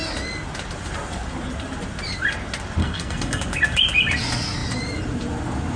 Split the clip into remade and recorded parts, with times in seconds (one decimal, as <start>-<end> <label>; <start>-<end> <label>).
0.0-2.8 recorded; 2.8-3.4 remade; 3.4-5.8 recorded